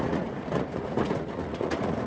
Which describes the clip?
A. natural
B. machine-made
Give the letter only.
B